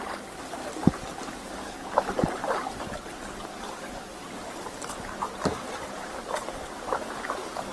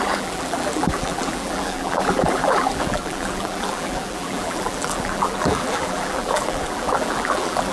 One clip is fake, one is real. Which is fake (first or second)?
second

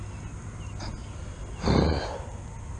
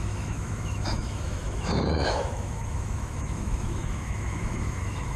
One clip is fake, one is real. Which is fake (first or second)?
second